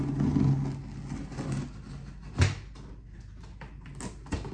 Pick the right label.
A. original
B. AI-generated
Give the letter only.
A